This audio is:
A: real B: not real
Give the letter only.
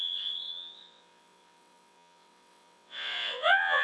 B